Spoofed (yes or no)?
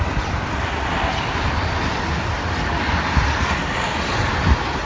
no